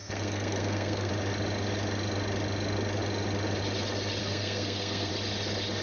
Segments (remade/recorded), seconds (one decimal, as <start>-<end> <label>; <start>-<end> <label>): 0.0-1.1 remade; 1.1-4.2 recorded; 4.2-5.1 remade; 5.1-5.8 recorded